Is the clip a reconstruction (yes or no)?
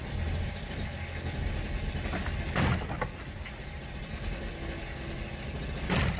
no